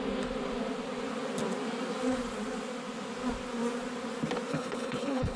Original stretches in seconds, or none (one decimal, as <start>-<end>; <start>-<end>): 0.0-4.5